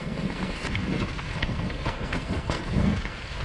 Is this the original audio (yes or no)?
no